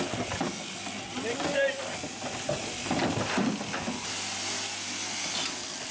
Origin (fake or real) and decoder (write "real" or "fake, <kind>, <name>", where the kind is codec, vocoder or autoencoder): real